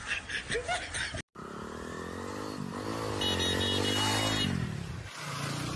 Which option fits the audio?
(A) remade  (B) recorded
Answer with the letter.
B